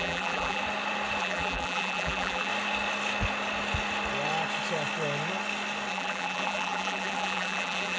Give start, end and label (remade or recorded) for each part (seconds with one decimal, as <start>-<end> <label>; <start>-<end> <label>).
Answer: 0.0-0.6 remade; 0.6-1.2 recorded; 1.2-2.5 remade; 2.5-5.9 recorded; 5.9-8.0 remade